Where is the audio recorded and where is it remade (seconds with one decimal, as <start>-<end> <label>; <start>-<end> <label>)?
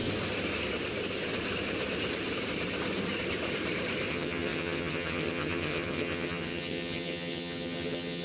0.0-4.1 recorded; 4.1-8.2 remade